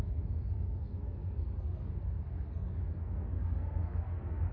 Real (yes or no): no